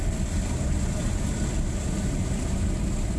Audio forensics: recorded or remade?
recorded